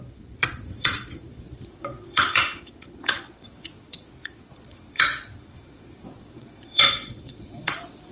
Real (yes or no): no